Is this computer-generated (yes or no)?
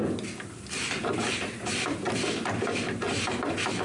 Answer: no